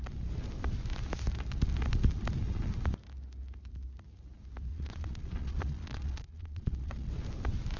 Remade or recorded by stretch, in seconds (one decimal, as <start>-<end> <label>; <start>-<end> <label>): 0.0-4.7 recorded; 4.7-7.1 remade; 7.1-7.8 recorded